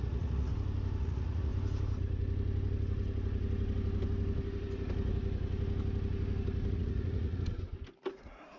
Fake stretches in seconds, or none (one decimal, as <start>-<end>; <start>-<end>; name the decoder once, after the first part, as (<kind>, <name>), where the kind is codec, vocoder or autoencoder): 0.0-0.5 (vocoder, Vocos); 1.0-1.5; 6.7-7.5; 8.1-8.6